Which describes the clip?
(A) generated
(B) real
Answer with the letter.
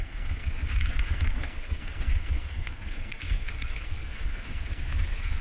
A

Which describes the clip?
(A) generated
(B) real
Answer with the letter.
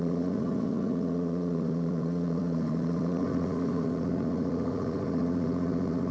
A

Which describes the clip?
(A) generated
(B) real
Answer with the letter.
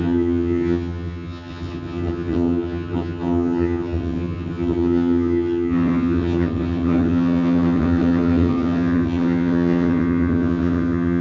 A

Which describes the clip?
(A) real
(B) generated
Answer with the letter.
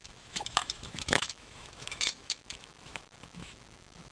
B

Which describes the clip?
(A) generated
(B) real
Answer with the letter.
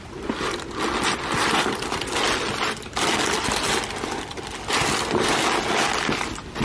B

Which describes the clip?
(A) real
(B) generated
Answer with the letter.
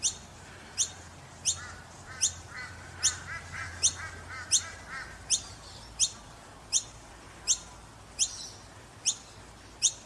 A